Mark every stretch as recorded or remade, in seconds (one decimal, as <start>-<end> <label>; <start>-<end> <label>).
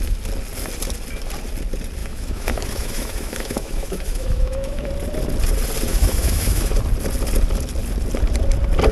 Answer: 0.0-2.0 recorded; 2.0-4.9 remade; 4.9-5.9 recorded; 5.9-6.7 remade; 6.7-8.9 recorded